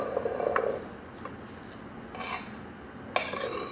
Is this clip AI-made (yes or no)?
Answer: no